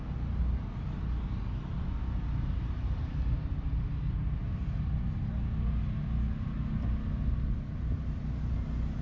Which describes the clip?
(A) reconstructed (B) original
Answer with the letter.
B